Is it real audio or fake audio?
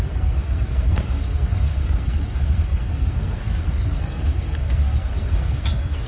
fake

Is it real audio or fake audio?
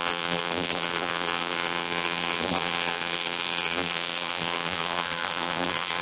fake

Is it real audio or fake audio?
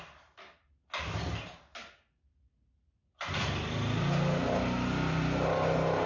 real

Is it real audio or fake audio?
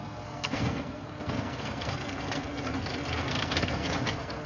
fake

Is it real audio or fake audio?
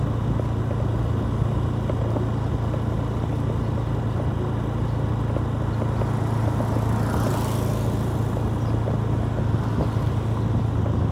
real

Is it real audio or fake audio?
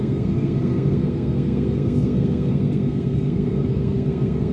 fake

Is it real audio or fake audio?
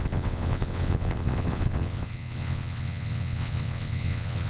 fake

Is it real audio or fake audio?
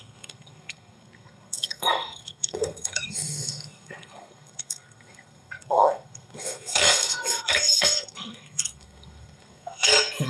fake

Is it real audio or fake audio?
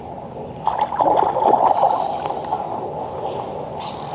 real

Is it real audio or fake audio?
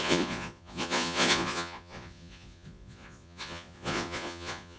fake